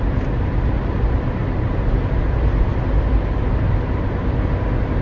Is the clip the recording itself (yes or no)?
yes